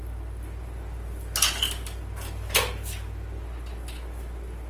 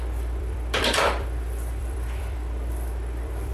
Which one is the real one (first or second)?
first